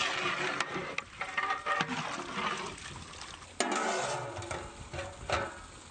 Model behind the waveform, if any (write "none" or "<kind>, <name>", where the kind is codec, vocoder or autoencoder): none